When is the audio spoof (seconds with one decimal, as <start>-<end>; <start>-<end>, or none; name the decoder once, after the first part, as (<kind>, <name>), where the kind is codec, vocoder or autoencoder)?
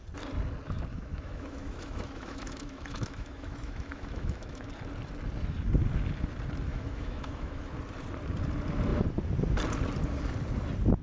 0.9-4.7 (autoencoder, DAC-VAE); 6.7-7.6